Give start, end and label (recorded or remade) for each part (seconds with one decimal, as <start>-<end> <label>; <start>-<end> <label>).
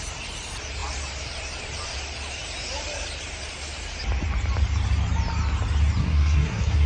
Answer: 0.0-6.0 recorded; 6.0-6.9 remade